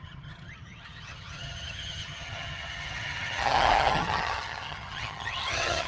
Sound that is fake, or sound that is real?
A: fake